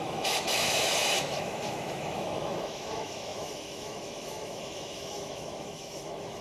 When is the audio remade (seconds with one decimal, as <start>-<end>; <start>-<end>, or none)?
0.0-6.4